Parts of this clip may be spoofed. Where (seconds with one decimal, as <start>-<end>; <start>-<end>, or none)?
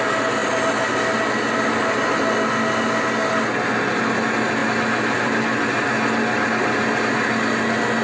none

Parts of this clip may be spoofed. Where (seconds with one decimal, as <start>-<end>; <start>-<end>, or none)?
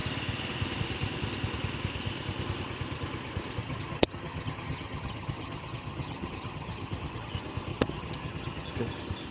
3.6-7.3; 7.7-8.7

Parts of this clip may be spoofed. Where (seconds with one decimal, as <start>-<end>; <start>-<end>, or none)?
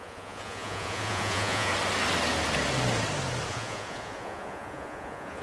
0.0-1.7; 3.5-5.4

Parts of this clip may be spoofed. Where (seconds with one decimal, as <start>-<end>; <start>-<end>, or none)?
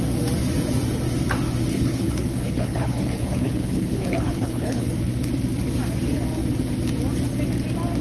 1.7-4.9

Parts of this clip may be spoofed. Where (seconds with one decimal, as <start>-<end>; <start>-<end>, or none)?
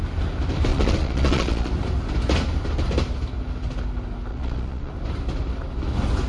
0.7-1.7; 4.3-4.9